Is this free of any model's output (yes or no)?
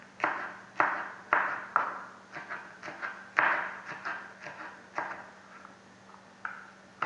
yes